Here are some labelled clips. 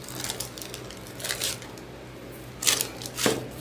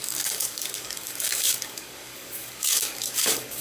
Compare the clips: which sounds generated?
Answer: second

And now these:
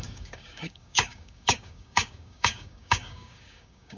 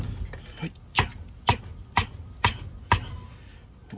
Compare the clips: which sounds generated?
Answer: first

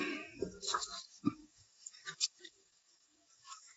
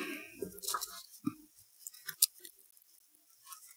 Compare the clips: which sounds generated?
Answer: first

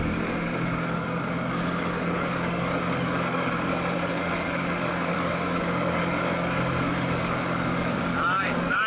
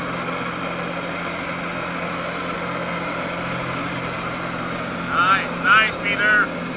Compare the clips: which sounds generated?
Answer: first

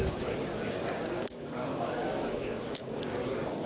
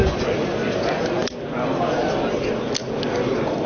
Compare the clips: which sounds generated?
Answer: first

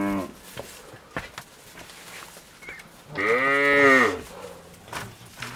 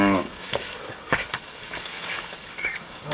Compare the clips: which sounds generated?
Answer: second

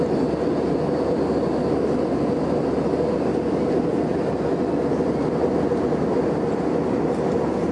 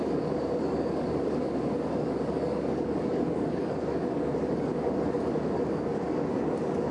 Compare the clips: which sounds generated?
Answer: second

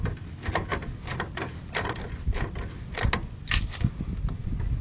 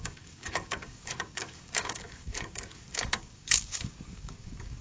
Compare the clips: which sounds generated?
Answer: second